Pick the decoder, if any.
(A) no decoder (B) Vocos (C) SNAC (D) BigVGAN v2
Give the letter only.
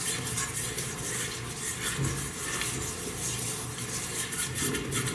A